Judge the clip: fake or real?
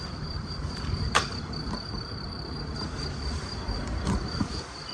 fake